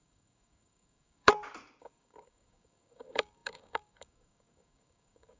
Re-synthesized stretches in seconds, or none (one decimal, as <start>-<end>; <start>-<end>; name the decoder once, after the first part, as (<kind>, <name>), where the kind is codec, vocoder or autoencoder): 0.0-1.3 (codec, DAC); 1.8-5.4